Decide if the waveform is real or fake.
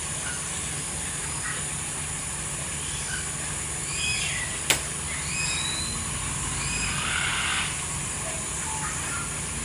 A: real